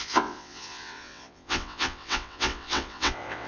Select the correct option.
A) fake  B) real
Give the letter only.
A